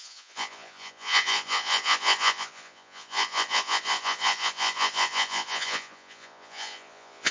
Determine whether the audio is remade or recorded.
remade